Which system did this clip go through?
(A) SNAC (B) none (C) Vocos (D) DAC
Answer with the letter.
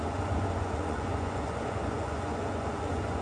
C